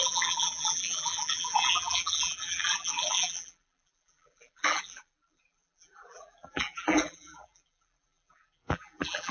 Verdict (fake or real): fake